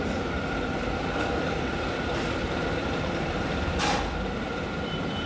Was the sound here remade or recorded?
remade